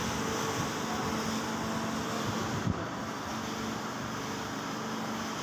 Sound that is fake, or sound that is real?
real